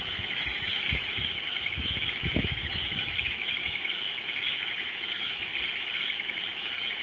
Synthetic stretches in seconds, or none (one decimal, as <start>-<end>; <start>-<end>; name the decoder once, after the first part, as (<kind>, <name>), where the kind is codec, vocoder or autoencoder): 0.0-5.5 (autoencoder, DAC-VAE); 6.0-7.0